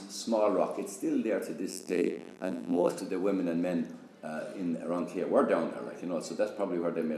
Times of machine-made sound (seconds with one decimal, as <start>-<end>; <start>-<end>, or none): 1.7-2.9